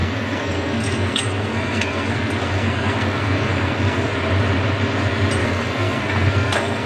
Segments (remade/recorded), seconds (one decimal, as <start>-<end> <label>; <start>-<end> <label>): 0.0-4.1 remade; 4.1-5.4 recorded; 5.4-6.9 remade